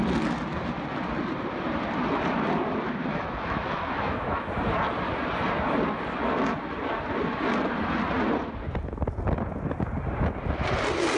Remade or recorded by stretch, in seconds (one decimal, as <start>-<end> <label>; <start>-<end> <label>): 0.0-3.1 recorded; 3.1-4.5 remade; 4.5-11.2 recorded